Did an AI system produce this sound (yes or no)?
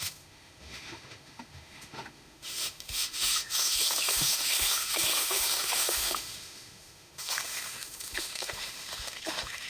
yes